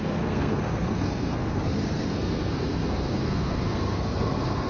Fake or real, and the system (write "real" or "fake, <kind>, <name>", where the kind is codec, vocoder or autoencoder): fake, codec, SNAC